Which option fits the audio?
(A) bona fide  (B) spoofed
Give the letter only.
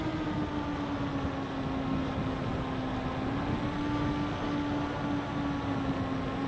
A